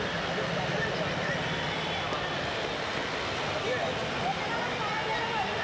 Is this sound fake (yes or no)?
no